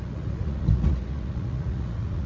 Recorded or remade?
remade